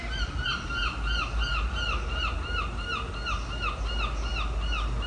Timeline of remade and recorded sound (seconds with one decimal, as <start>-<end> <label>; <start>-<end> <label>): 0.0-5.1 recorded

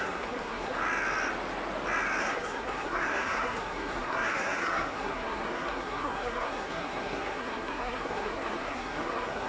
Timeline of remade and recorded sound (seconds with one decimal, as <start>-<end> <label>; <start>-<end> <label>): 0.0-0.8 remade; 0.8-2.2 recorded; 2.2-9.5 remade